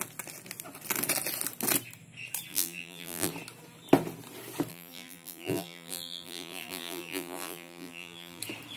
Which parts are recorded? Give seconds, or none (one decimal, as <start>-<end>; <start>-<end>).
0.0-2.5; 3.3-4.7; 8.4-8.8